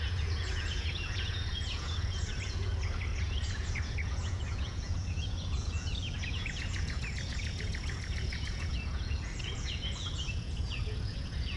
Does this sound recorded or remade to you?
remade